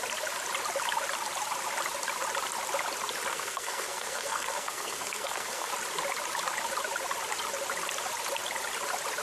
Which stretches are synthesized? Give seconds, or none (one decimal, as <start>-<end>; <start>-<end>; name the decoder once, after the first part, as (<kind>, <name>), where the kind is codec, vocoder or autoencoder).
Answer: 3.3-5.7 (codec, SNAC)

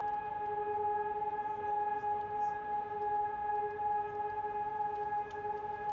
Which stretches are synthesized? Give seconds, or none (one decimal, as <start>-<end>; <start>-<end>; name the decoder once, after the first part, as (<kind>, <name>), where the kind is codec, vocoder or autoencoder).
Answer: none

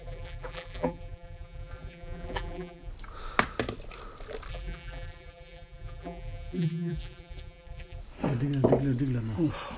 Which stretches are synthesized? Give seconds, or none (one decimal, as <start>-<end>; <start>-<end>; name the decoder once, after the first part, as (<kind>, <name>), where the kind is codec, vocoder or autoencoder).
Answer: 0.0-2.9 (vocoder, BigVGAN v2); 4.5-8.0

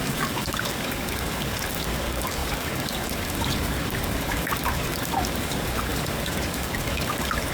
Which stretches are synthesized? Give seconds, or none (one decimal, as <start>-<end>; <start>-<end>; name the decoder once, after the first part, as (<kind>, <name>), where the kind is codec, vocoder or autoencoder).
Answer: 0.0-7.5 (codec, DAC)

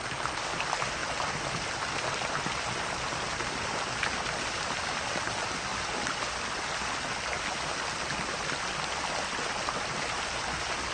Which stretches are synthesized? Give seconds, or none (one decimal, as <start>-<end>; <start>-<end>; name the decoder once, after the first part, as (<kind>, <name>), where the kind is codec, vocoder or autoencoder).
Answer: none